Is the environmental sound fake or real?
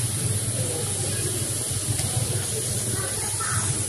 real